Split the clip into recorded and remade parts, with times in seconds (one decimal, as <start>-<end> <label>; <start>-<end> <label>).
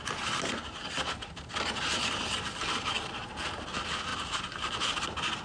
0.0-5.4 recorded